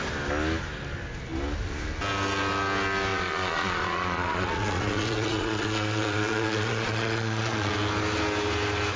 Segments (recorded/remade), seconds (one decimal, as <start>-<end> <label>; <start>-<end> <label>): 0.0-3.1 recorded; 3.1-7.7 remade; 7.7-9.0 recorded